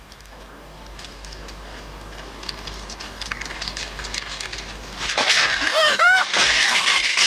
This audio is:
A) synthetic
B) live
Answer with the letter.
A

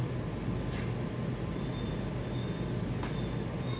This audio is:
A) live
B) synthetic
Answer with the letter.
A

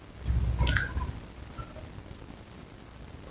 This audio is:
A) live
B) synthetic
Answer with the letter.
A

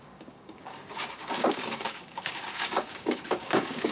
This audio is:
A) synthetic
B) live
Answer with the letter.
A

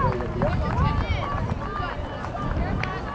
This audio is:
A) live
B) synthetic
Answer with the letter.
A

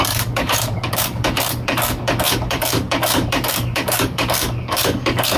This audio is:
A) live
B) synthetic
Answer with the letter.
B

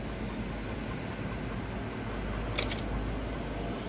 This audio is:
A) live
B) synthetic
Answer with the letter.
A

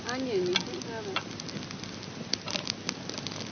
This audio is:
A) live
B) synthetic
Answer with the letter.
A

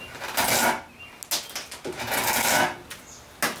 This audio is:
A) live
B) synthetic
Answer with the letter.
A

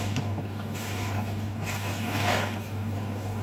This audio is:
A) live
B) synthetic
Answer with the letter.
B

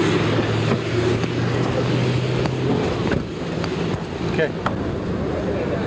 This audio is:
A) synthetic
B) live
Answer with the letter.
B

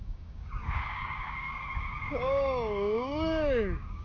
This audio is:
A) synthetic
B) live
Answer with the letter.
A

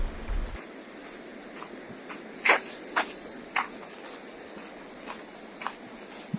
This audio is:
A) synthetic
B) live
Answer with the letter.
B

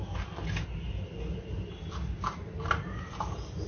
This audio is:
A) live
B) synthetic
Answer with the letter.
A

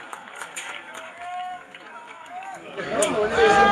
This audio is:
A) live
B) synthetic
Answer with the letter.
B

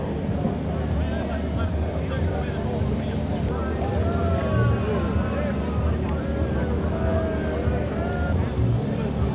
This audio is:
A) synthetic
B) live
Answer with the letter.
B